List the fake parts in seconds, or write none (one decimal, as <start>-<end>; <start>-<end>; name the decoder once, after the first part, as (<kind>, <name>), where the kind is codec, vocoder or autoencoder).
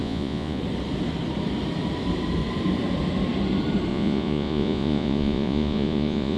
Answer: 0.0-0.6 (vocoder, Vocos); 3.9-6.4